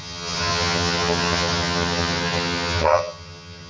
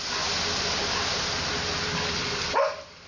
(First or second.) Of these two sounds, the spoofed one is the first